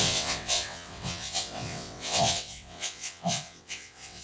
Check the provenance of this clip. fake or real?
fake